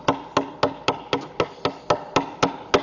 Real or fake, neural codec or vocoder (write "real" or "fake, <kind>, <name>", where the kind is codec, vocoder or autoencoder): real